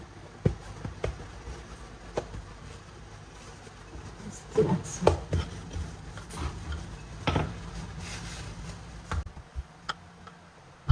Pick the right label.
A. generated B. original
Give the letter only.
B